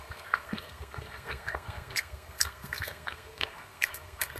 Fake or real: fake